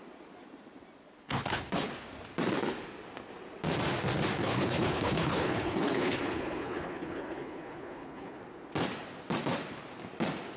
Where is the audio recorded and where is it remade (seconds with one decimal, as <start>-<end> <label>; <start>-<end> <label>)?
0.0-1.2 recorded; 1.2-1.9 remade; 1.9-4.4 recorded; 4.4-8.4 remade; 8.4-10.6 recorded